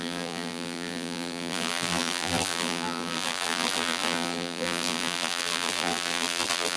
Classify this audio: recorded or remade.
remade